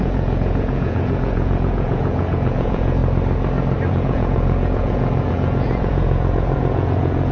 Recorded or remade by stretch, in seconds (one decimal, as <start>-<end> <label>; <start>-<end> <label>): 0.0-3.0 remade; 3.0-3.9 recorded; 3.9-7.3 remade